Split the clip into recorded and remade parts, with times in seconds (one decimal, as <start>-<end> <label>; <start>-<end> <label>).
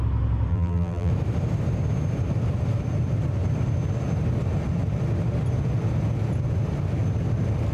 0.0-0.5 recorded; 0.5-1.1 remade; 1.1-7.7 recorded